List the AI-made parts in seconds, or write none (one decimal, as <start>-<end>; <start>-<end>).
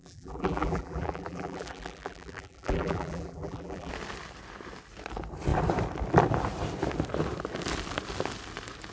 0.0-3.9